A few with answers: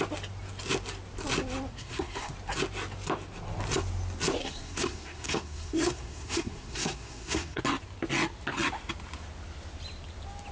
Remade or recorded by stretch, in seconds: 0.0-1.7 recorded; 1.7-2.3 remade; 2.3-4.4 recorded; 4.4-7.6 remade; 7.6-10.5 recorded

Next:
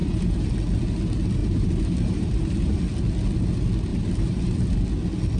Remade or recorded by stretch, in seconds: 0.0-0.5 remade; 0.5-1.4 recorded; 1.4-2.8 remade; 2.8-3.9 recorded; 3.9-4.8 remade; 4.8-5.4 recorded

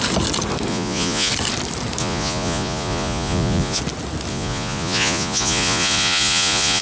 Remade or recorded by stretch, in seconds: 0.0-0.7 recorded; 0.7-1.3 remade; 1.3-2.0 recorded; 2.0-3.8 remade; 3.8-4.3 recorded; 4.3-6.8 remade

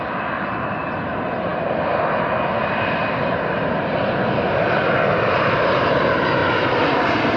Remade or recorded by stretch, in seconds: 0.0-6.4 recorded; 6.4-7.0 remade; 7.0-7.4 recorded